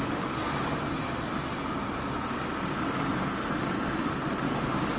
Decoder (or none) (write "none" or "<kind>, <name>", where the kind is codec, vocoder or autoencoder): none